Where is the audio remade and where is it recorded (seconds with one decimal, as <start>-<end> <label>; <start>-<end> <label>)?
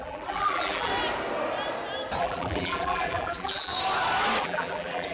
0.0-0.9 remade; 0.9-2.2 recorded; 2.2-3.7 remade; 3.7-4.4 recorded; 4.4-5.1 remade